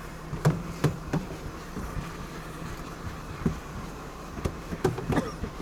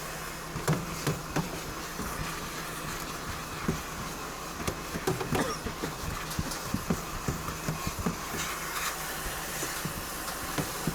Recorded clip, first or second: second